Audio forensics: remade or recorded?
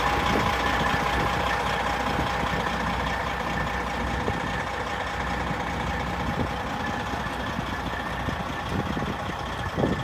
recorded